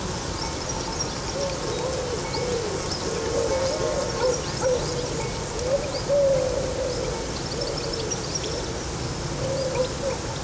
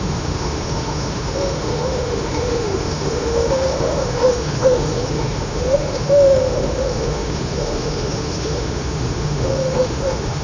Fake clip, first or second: second